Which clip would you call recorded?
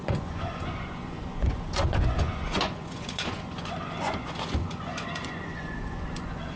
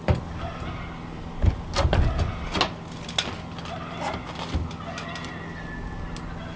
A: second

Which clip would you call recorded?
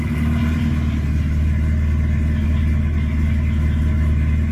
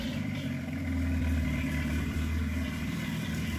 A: first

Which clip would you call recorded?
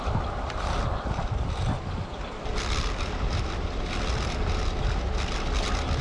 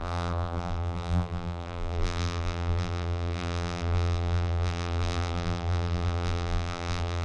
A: first